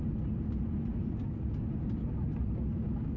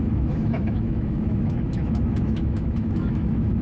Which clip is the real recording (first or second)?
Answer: first